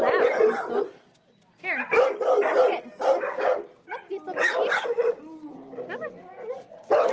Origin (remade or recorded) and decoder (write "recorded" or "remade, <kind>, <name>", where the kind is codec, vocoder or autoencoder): recorded